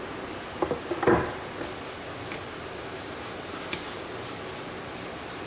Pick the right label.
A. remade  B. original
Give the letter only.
B